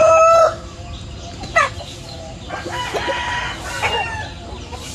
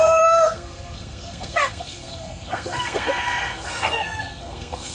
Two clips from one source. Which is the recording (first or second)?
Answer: first